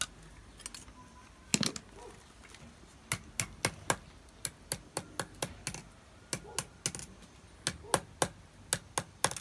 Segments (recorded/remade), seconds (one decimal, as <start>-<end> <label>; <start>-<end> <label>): 0.0-9.4 recorded

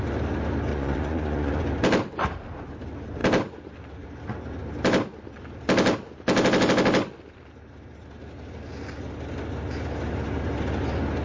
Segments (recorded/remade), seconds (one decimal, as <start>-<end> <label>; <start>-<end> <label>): 0.0-0.7 recorded; 0.7-1.6 remade; 1.6-11.2 recorded

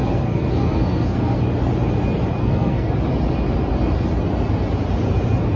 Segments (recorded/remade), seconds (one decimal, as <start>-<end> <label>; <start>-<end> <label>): 0.0-1.4 remade; 1.4-2.4 recorded; 2.4-2.9 remade; 2.9-5.6 recorded